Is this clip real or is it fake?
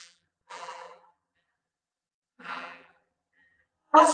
fake